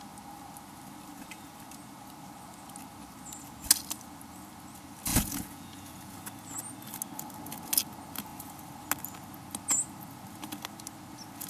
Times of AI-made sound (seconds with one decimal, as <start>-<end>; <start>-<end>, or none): 5.1-6.2